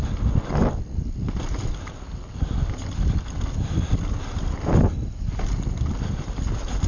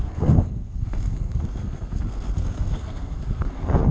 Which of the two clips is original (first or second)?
first